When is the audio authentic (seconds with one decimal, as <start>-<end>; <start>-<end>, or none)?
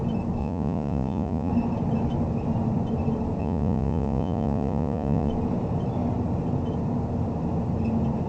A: 0.0-0.4; 1.5-3.4; 5.3-8.3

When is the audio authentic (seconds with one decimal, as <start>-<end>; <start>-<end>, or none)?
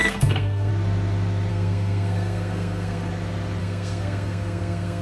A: 0.7-1.5; 3.1-3.6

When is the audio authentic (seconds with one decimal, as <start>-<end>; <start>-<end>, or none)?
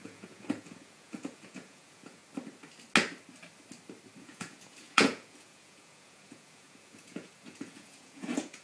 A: 2.2-4.2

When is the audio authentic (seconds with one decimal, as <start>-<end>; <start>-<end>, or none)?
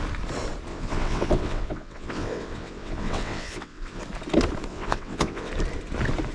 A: 0.0-0.7; 4.0-4.7; 5.5-6.3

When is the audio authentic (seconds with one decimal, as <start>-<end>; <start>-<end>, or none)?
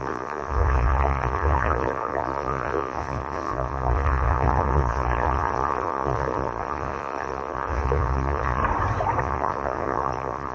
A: 8.6-9.2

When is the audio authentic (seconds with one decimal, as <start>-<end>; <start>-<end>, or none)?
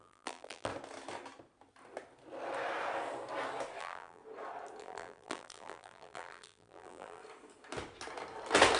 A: 0.7-3.8; 4.2-4.8; 7.2-8.8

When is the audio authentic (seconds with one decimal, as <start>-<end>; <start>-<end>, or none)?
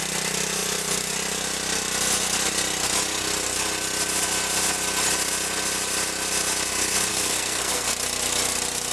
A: 0.0-7.1; 7.9-8.9